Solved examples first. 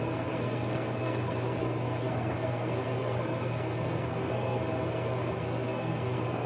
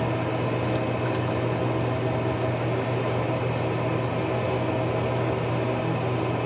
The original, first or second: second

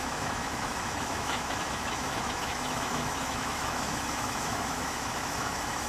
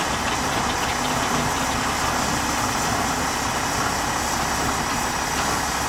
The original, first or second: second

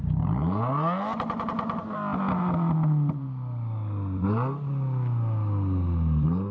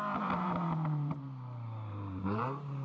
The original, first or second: first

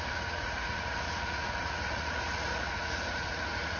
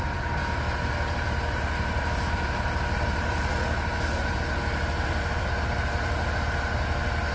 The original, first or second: second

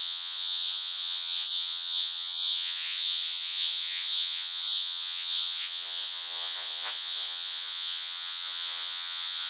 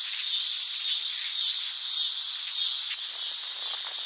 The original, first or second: second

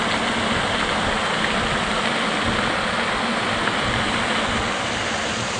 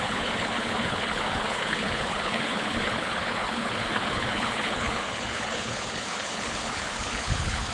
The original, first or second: first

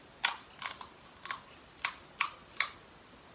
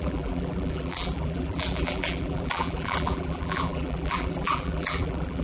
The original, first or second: first